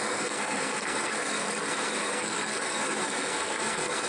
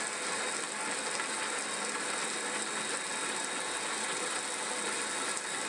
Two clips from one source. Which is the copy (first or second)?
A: first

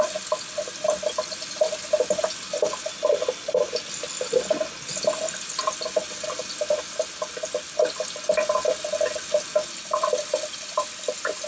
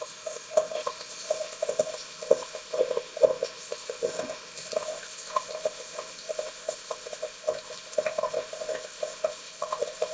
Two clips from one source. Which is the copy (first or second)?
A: second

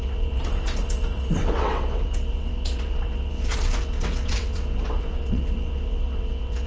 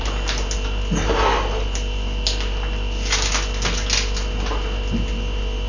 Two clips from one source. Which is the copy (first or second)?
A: first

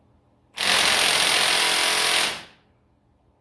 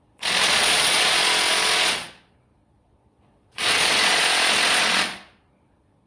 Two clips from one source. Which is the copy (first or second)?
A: second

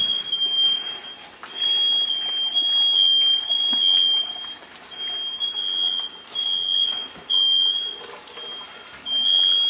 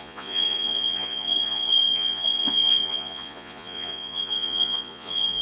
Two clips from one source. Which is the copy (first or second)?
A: second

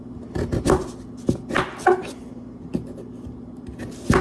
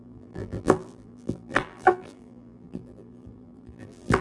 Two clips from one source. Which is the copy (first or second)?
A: second